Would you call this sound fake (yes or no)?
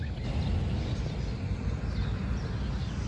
no